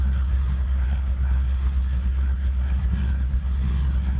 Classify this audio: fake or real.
fake